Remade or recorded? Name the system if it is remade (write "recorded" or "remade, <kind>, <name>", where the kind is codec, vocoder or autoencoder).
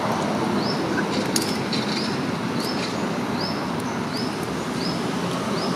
recorded